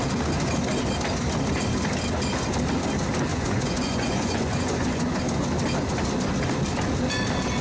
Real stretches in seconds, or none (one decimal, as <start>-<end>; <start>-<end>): 0.0-3.3; 5.2-7.6

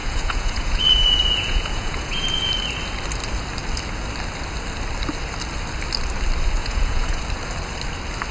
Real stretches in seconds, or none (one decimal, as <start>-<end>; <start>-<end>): 2.5-6.6; 7.2-8.3

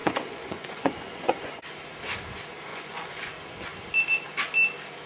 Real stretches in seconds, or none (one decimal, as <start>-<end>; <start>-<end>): 1.6-2.7; 3.3-5.1

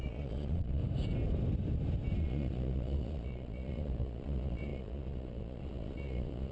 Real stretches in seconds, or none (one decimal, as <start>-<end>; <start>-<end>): 0.8-2.2

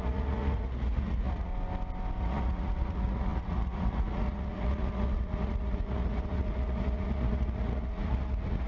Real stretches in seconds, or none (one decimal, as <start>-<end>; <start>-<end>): 1.5-2.2

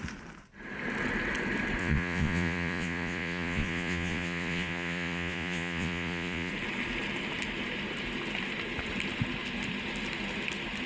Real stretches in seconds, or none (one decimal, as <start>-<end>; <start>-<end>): 0.0-1.8; 6.5-10.9